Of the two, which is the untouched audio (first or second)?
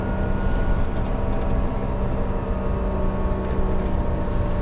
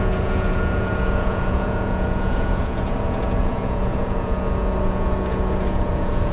first